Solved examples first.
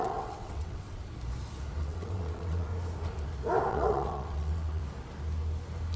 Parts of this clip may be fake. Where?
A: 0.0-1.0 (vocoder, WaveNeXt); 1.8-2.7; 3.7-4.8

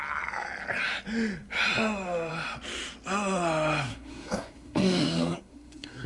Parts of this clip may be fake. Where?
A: 3.9-6.1 (codec, SNAC)

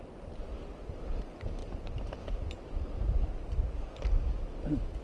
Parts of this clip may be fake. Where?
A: 1.6-2.2 (vocoder, BigVGAN v2)

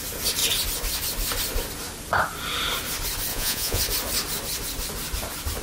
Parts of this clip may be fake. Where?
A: 3.3-3.8 (vocoder, Vocos)

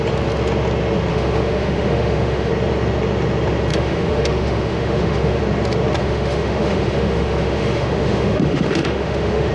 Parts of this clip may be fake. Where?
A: 1.1-2.5 (autoencoder, DAC-VAE); 3.7-5.4; 6.0-9.5

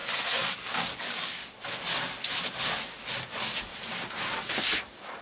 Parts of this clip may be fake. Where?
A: 0.0-1.4 (codec, DAC); 3.2-3.7; 4.5-5.2

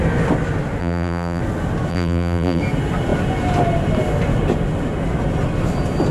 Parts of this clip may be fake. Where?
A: 0.8-1.4 (vocoder, BigVGAN v2); 1.9-2.6

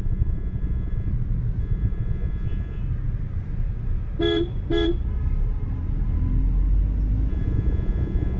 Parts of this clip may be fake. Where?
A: 0.0-1.1 (vocoder, Vocos); 1.6-2.8; 7.3-8.4